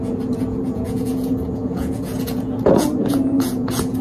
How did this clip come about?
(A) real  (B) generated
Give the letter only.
B